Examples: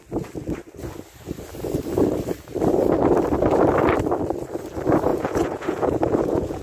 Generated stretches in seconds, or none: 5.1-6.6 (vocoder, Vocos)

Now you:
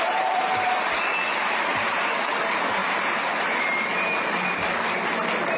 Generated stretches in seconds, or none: none

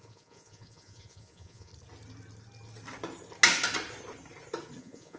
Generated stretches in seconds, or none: 0.0-1.7 (vocoder, Vocos); 4.8-5.2